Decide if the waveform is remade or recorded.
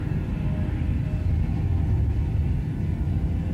recorded